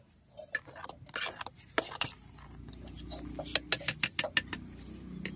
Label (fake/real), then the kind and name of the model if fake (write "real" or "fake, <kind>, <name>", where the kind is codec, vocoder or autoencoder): real